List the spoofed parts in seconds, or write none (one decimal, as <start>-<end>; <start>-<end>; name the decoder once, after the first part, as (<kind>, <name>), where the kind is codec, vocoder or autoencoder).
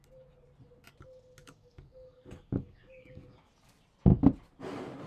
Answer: 1.4-3.5 (codec, DAC)